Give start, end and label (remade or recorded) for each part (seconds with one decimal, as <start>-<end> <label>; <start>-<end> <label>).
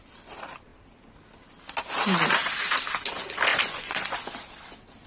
0.0-3.5 recorded; 3.5-4.1 remade; 4.1-5.1 recorded